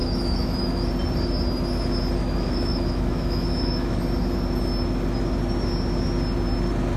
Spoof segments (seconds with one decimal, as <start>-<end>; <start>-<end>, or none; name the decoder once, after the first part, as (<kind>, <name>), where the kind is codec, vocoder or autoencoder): 0.0-0.9 (autoencoder, DAC-VAE); 2.2-4.0